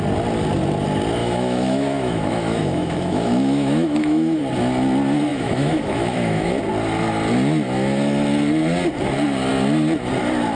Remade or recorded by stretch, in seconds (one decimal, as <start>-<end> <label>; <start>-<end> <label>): 0.0-1.2 recorded; 1.2-4.4 remade; 4.4-5.3 recorded; 5.3-6.5 remade; 6.5-10.6 recorded

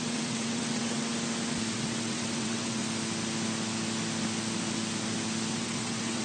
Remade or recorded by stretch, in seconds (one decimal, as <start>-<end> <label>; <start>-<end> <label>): 0.0-1.1 remade; 1.1-1.7 recorded; 1.7-2.8 remade; 2.8-5.5 recorded; 5.5-6.2 remade